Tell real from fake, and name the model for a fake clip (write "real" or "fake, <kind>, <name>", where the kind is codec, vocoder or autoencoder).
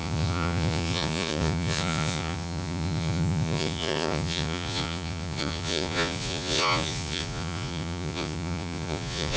fake, vocoder, Vocos